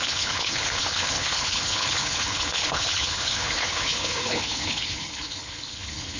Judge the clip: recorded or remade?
remade